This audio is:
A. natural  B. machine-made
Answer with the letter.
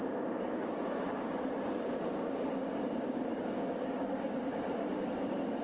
B